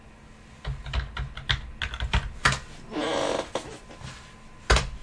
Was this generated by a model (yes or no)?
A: no